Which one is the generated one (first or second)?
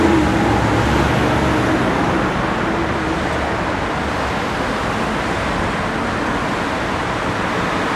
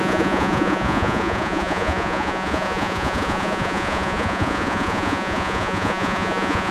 second